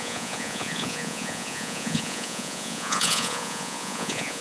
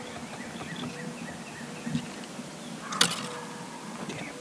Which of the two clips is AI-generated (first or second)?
first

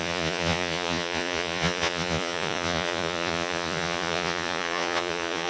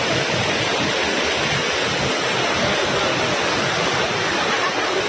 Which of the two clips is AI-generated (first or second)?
first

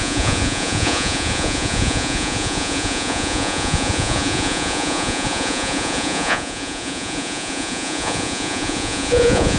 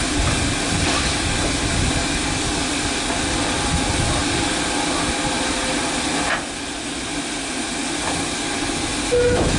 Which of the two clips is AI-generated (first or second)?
first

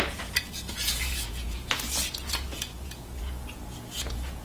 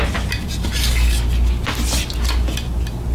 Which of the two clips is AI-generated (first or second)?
first